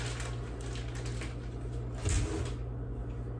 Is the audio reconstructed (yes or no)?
no